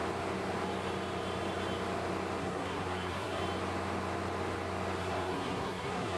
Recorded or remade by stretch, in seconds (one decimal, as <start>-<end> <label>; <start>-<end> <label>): 0.0-2.4 recorded; 2.4-3.4 remade; 3.4-5.0 recorded; 5.0-6.2 remade